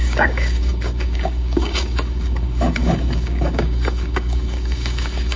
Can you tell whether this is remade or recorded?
remade